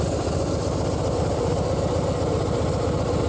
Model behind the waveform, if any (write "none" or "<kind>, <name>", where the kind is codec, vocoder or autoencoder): none